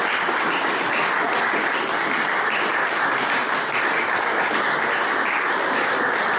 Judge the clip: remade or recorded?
recorded